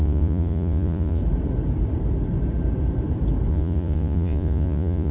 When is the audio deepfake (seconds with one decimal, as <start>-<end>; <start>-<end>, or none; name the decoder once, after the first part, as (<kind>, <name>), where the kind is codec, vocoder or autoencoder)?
0.0-1.2 (vocoder, Vocos); 3.5-5.1